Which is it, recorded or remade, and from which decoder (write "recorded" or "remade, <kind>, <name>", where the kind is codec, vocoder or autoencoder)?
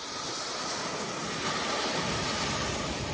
recorded